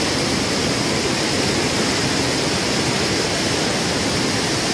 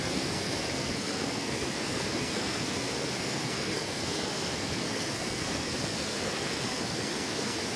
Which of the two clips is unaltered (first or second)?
first